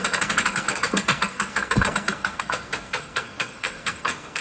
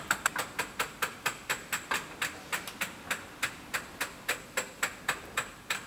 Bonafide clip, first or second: second